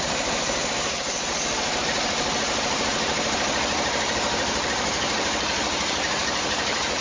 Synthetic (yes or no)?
yes